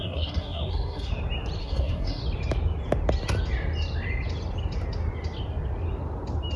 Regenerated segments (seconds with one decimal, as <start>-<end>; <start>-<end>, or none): 0.0-1.1; 1.6-2.2